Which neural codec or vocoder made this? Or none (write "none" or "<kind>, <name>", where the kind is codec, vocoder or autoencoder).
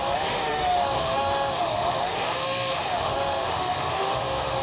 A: autoencoder, DAC-VAE